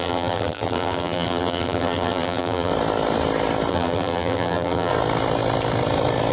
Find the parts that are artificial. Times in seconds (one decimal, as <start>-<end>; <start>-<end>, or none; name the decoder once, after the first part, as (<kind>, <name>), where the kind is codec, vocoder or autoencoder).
0.0-2.7 (vocoder, BigVGAN v2); 3.7-4.9